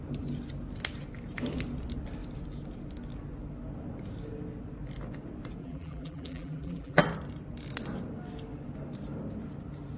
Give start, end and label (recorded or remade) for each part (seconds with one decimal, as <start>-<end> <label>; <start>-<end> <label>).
0.0-5.6 recorded; 5.6-7.0 remade; 7.0-10.0 recorded